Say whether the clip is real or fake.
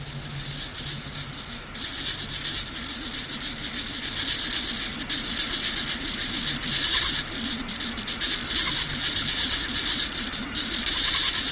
real